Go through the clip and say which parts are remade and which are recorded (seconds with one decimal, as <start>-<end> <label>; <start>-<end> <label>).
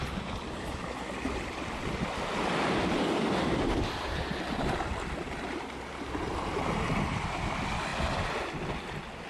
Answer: 0.0-9.3 recorded